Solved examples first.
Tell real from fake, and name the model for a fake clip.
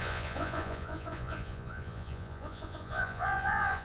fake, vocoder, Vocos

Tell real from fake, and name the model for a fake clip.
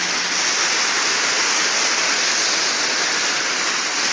real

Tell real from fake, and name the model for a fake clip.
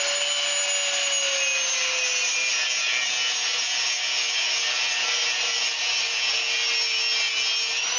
real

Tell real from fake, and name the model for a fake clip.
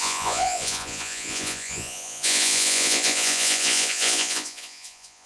fake, vocoder, Vocos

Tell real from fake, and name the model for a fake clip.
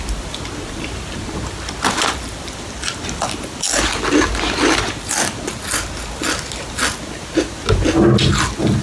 real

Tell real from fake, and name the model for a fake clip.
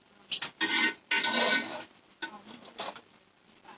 real